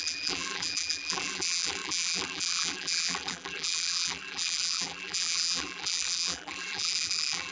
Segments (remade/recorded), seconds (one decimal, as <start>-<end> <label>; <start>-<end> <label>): 0.0-7.5 remade